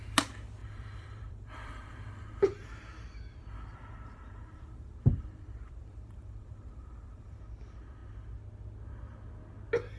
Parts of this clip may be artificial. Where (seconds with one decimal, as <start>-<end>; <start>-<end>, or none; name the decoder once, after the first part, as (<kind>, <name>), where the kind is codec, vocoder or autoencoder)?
0.6-2.7 (vocoder, BigVGAN v2); 3.5-7.4